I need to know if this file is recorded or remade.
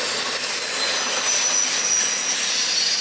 recorded